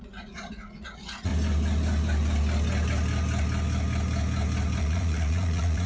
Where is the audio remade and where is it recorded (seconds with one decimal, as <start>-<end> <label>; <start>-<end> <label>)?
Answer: 0.0-1.3 remade; 1.3-4.8 recorded; 4.8-5.9 remade